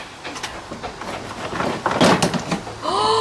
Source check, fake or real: real